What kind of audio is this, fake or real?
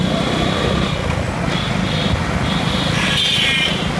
real